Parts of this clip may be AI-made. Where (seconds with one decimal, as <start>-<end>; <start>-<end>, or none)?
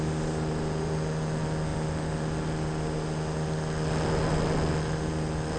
none